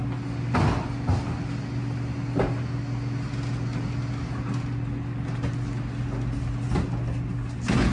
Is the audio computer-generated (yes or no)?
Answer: no